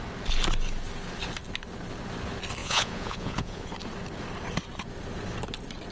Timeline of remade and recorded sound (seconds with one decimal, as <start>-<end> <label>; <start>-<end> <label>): 0.0-2.6 recorded; 2.6-3.7 remade; 3.7-5.9 recorded